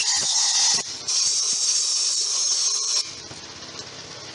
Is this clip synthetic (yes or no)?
no